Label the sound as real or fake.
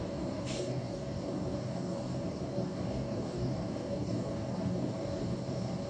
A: fake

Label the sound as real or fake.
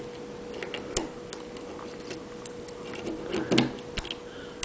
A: real